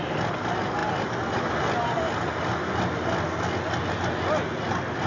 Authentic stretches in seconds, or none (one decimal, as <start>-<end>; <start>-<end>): 0.0-5.1